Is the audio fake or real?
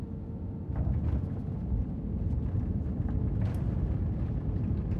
real